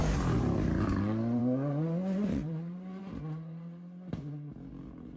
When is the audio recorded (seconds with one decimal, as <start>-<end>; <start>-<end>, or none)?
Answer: 0.0-2.3; 3.0-5.2